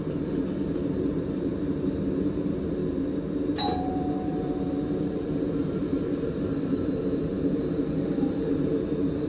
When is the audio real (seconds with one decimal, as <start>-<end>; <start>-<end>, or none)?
1.5-2.2; 2.8-3.8